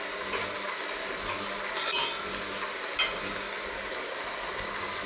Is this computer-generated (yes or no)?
no